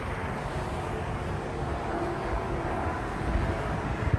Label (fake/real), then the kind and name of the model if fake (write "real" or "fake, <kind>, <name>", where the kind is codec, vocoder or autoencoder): fake, codec, DAC